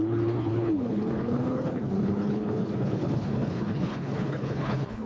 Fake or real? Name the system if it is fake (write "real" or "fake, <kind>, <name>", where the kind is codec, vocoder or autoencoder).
fake, codec, HILCodec